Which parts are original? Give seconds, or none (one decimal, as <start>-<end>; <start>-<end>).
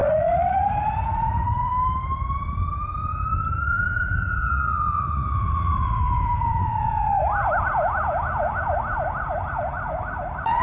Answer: 1.7-3.6; 7.2-9.5